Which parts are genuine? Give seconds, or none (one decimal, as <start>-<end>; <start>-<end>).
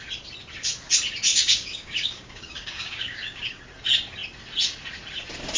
0.0-1.3; 3.6-5.6